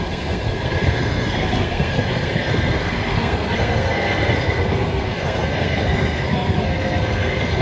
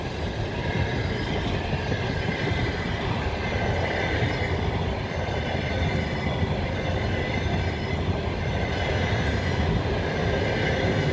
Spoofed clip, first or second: first